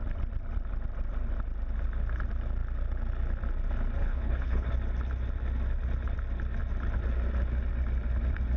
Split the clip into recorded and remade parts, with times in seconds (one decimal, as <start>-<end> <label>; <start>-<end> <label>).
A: 0.0-4.0 recorded; 4.0-4.7 remade; 4.7-8.6 recorded